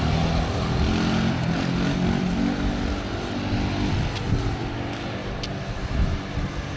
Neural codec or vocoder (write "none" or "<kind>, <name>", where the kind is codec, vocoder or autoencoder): none